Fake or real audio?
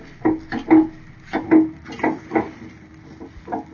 real